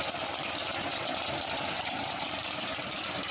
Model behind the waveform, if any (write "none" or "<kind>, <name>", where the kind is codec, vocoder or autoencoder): none